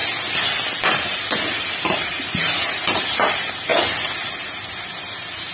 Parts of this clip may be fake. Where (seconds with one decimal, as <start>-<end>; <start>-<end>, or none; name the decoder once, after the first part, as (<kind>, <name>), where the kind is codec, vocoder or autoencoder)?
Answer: 0.9-3.7 (vocoder, BigVGAN v2); 4.4-5.5